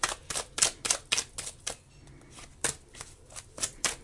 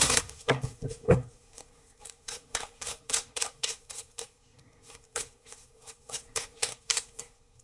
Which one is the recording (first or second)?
first